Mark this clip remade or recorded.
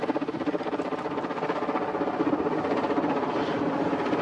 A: recorded